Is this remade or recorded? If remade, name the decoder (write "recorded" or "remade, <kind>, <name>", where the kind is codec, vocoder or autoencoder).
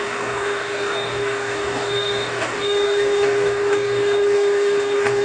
remade, codec, DAC